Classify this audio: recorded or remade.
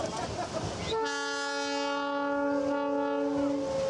recorded